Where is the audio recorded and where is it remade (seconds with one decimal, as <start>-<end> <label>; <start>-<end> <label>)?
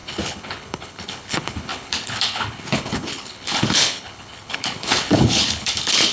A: 0.0-6.1 remade